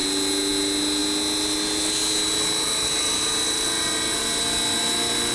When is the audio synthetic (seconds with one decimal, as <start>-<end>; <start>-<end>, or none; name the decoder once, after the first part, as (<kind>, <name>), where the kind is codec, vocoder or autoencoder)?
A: none